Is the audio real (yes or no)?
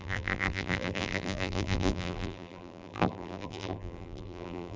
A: no